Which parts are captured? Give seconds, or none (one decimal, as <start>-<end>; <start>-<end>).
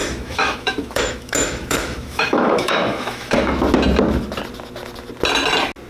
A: 3.5-5.9